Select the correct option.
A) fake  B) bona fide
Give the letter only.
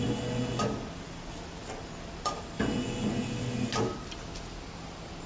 B